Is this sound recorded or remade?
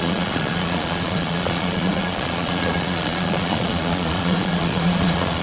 remade